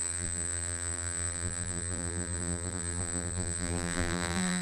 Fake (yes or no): yes